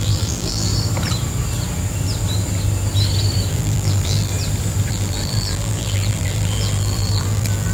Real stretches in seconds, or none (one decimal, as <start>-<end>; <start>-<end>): 0.7-3.5; 4.3-4.9